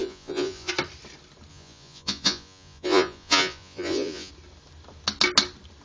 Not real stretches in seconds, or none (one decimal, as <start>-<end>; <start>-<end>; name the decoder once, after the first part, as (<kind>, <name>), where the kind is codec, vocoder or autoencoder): 0.0-0.7 (vocoder, Vocos); 1.5-4.3